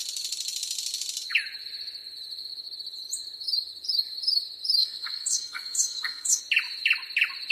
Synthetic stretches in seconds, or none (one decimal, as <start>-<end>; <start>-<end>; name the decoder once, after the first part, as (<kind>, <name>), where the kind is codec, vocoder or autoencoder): 4.8-6.4 (codec, SNAC)